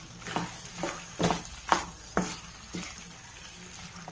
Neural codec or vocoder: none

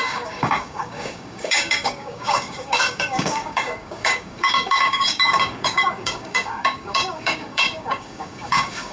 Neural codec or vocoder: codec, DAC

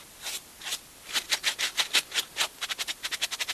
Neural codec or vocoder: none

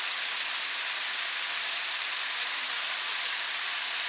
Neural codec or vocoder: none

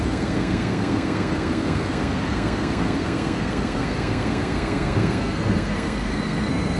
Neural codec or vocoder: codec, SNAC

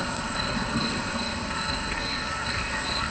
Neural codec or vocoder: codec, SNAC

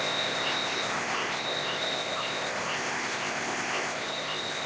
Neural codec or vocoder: codec, ZipCodec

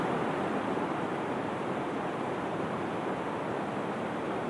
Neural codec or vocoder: none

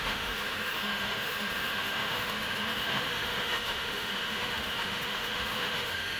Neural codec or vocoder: autoencoder, DAC-VAE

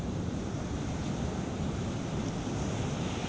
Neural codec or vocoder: vocoder, BigVGAN v2